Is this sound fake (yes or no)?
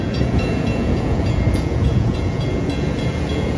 yes